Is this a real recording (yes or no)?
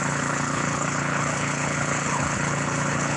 no